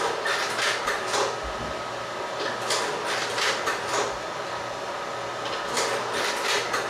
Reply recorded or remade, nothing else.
recorded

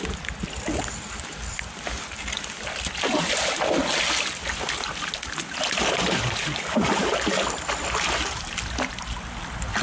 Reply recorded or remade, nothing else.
recorded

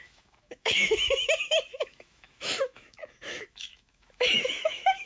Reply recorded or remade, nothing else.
remade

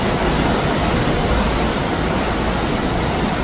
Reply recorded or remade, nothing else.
recorded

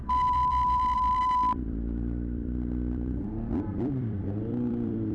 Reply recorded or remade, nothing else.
remade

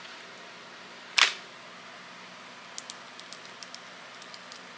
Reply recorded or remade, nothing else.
recorded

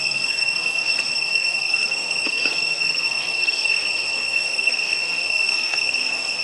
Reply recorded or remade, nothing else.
remade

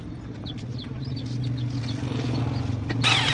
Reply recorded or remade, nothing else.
recorded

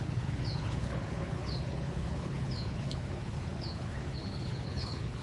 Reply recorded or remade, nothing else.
remade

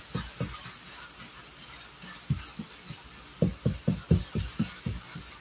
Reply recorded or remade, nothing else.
recorded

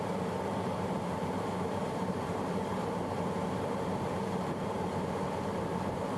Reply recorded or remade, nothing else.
remade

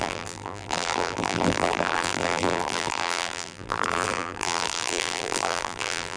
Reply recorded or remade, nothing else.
remade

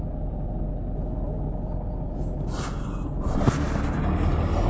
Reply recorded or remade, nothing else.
recorded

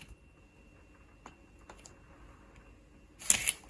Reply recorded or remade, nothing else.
recorded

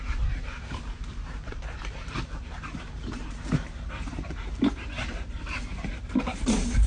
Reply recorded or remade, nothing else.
remade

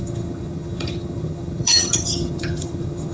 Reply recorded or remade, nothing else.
remade